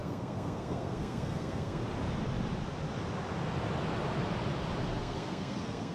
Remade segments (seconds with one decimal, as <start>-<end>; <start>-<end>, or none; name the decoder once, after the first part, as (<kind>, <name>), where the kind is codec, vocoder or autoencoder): 0.0-1.8 (codec, SNAC); 5.0-5.9